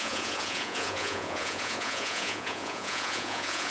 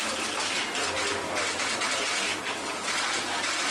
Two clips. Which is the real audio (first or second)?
second